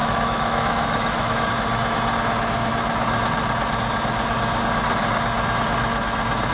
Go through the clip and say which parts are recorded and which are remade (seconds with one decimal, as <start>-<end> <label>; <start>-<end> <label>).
0.0-1.5 remade; 1.5-6.5 recorded